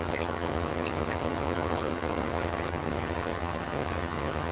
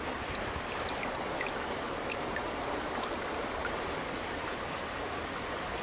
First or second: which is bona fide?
second